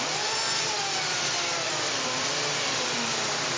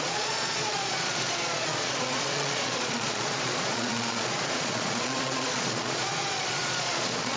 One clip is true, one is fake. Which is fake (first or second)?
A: second